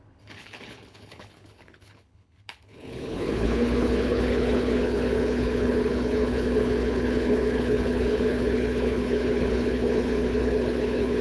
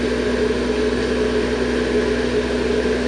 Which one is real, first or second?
second